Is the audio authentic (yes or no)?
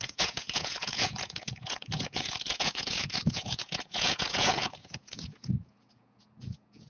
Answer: no